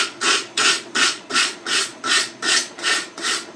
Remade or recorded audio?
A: remade